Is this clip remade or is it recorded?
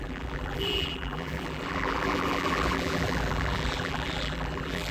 remade